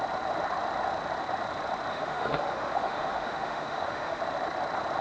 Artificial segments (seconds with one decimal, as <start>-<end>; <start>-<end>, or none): 1.9-4.2